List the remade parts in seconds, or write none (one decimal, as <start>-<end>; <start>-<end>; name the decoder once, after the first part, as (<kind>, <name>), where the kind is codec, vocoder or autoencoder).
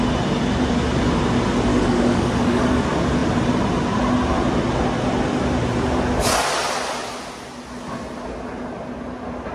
1.7-2.8 (codec, DAC)